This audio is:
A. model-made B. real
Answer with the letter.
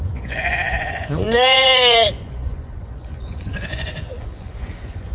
A